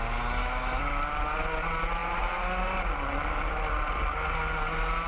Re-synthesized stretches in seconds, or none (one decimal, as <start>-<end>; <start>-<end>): 0.4-1.0